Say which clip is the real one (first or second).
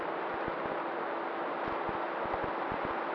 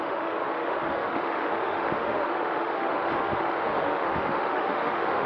first